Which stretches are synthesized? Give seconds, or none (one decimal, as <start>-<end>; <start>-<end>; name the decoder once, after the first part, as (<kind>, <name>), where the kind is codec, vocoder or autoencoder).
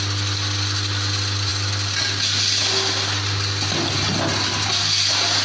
none